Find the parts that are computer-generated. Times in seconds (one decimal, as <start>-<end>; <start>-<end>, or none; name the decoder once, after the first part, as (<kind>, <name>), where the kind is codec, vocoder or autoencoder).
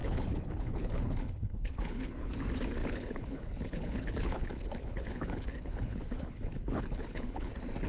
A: 0.0-2.4 (codec, HILCodec); 2.8-7.5